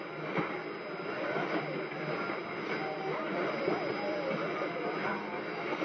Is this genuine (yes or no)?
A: yes